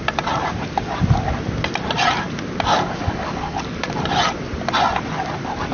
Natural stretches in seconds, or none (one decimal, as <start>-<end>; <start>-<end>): 0.0-2.7; 3.9-5.7